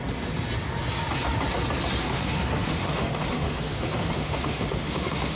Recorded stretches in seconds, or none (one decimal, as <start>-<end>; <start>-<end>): 0.0-2.0

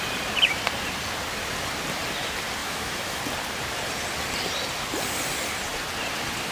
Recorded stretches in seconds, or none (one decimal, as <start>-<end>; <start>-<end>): 0.0-2.6; 3.2-6.5

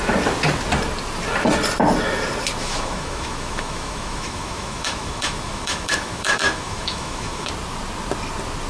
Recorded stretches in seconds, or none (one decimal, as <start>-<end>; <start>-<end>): 0.0-2.6; 7.5-8.7